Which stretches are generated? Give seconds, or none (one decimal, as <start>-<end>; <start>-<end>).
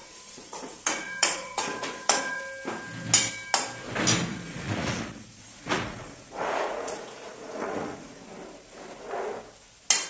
0.0-2.4; 4.3-8.2